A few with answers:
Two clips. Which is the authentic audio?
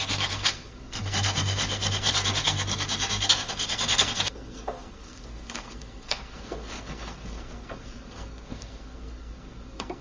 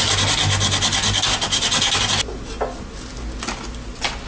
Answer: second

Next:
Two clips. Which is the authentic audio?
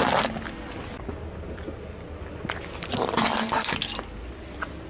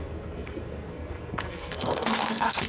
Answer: first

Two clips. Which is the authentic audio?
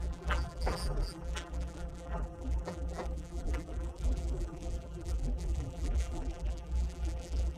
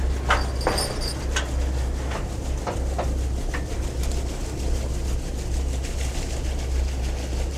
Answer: second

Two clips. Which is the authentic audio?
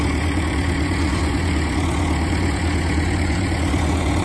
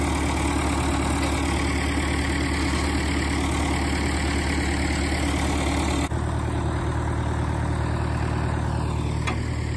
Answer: second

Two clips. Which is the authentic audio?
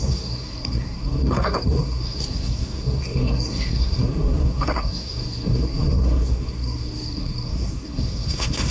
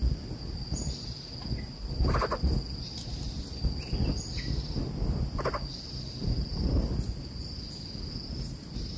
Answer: second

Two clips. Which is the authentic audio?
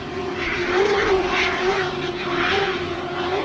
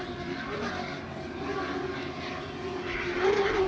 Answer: second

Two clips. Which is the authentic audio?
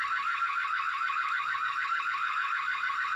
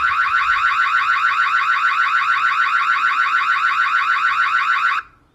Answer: second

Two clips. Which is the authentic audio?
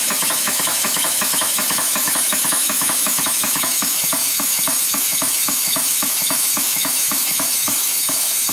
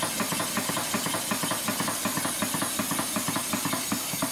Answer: second